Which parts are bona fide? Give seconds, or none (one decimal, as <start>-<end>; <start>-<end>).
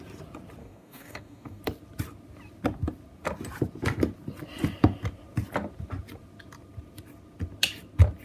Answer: 0.0-0.6; 1.6-8.2